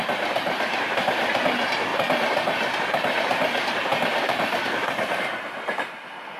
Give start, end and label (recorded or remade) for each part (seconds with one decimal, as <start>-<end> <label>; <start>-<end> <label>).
0.0-6.4 remade